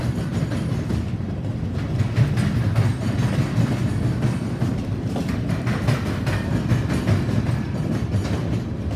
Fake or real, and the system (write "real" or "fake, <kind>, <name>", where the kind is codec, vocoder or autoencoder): real